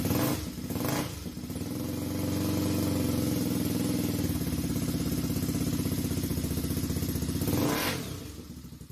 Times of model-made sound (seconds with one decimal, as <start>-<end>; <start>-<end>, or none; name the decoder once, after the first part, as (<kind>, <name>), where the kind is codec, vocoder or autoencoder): none